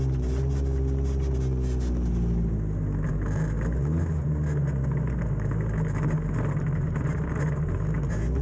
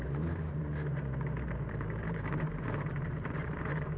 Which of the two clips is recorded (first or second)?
first